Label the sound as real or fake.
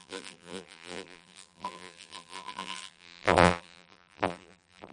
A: fake